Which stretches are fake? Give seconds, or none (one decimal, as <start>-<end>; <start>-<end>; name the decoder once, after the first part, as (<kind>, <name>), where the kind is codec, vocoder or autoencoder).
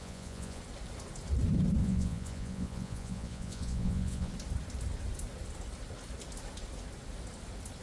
0.0-0.6 (vocoder, Vocos); 1.8-4.3